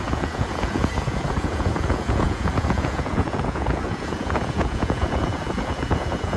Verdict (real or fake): fake